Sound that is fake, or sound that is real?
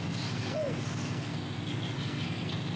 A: fake